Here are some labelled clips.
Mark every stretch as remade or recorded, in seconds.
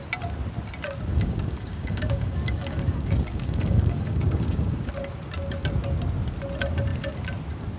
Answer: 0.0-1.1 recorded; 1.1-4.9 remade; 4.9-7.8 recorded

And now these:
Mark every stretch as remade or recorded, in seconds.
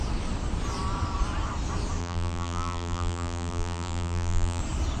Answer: 0.0-2.0 recorded; 2.0-4.6 remade; 4.6-5.0 recorded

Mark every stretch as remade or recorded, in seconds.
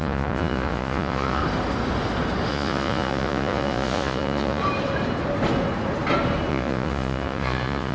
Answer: 0.0-1.4 remade; 1.4-2.5 recorded; 2.5-4.6 remade; 4.6-6.5 recorded; 6.5-7.9 remade